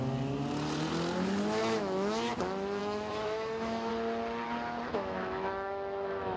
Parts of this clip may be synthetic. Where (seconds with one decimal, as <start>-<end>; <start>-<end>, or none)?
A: 1.6-2.3; 2.8-3.9; 4.9-6.4